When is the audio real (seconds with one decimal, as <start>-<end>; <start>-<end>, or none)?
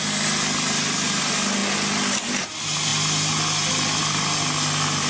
0.0-5.1